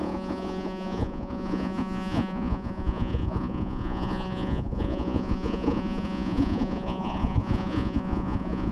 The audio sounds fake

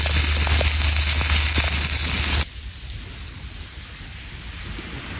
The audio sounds real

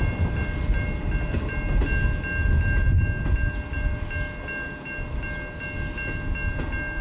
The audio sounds real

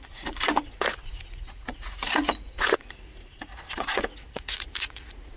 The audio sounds fake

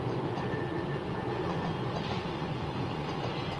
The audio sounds fake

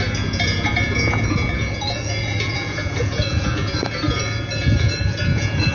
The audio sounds fake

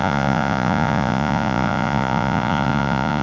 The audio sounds fake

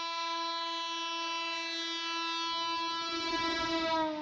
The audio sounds real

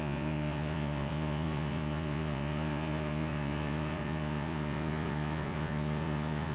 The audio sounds fake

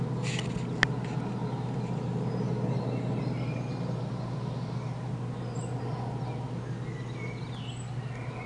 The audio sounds real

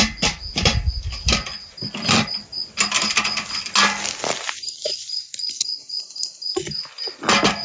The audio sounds real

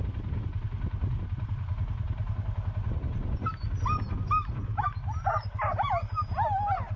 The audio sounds real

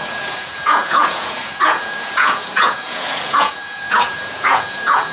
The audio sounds fake